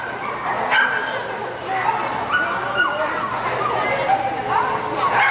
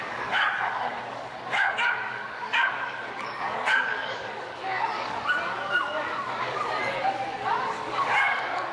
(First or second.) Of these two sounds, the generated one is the second